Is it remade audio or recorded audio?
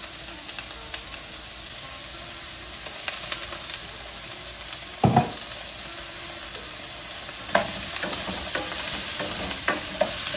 recorded